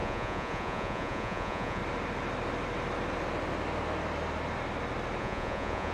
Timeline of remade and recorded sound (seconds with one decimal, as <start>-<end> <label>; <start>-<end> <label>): 0.0-1.8 remade; 1.8-5.2 recorded; 5.2-5.9 remade